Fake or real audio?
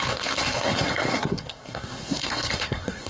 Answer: fake